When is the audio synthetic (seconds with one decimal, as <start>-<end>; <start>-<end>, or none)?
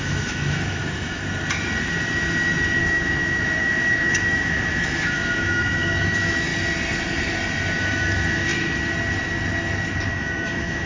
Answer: 0.0-1.2; 2.8-6.5; 7.8-8.5; 10.1-10.9